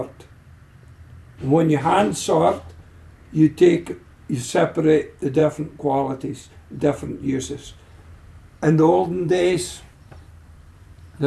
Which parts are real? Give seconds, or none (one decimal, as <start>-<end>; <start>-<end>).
0.0-1.2; 2.7-7.6